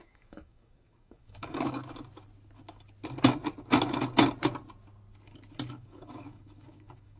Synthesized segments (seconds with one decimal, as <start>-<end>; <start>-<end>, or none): 0.0-1.8; 5.7-7.2